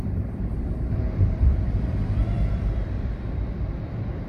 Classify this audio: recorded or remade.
remade